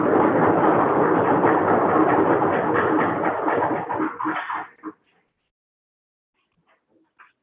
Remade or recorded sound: recorded